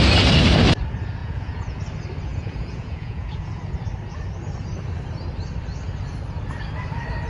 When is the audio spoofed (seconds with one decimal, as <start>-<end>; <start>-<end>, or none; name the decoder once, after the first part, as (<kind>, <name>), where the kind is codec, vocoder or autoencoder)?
1.2-1.8 (vocoder, Vocos); 2.3-3.6